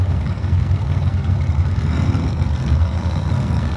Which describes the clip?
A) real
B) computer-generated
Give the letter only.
B